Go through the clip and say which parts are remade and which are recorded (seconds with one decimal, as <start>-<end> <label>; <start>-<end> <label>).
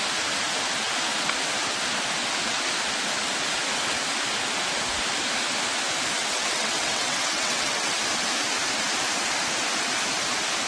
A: 0.0-6.2 recorded; 6.2-8.0 remade; 8.0-10.7 recorded